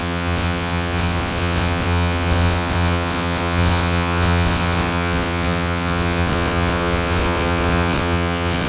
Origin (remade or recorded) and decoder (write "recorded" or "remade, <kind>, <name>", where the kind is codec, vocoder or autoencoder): remade, vocoder, WaveNeXt